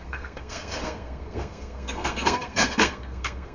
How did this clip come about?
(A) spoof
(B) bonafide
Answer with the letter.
A